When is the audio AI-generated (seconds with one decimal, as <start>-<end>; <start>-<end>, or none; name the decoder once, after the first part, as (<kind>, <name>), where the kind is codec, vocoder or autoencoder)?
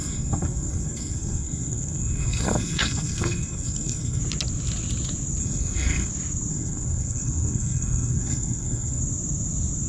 0.0-4.2 (codec, SNAC); 5.4-6.1; 6.5-9.0